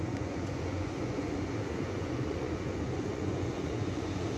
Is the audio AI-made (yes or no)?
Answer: yes